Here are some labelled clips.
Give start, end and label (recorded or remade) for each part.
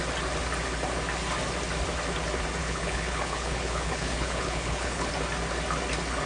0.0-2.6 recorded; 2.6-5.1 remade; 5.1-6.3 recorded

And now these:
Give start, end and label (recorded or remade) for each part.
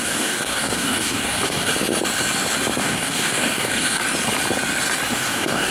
0.0-1.7 remade; 1.7-2.8 recorded; 2.8-4.0 remade; 4.0-5.1 recorded; 5.1-5.7 remade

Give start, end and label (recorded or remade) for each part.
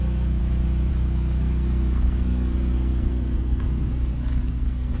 0.0-0.4 remade; 0.4-0.9 recorded; 0.9-5.0 remade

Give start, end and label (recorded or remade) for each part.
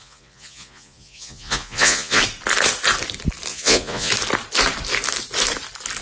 0.0-2.2 remade; 2.2-3.5 recorded; 3.5-4.1 remade; 4.1-6.0 recorded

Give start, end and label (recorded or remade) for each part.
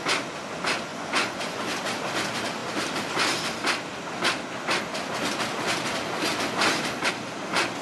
0.0-0.9 recorded; 0.9-1.6 remade; 1.6-7.8 recorded